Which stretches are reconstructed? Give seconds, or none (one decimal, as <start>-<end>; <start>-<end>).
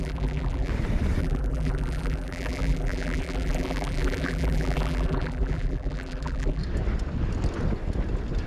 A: 0.0-0.7; 1.2-6.6